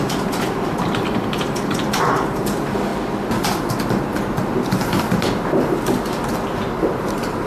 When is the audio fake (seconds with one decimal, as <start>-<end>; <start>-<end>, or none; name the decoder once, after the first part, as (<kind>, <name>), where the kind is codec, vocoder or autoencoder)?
0.0-2.9 (vocoder, BigVGAN v2)